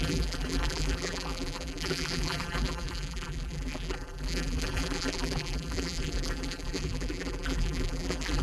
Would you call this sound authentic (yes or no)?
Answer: no